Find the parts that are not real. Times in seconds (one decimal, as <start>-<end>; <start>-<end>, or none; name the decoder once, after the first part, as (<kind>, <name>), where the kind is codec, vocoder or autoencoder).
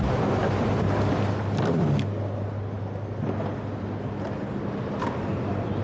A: none